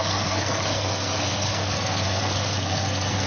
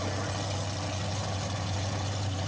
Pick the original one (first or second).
second